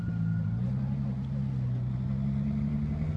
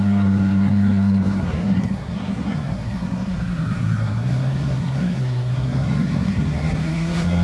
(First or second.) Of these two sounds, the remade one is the second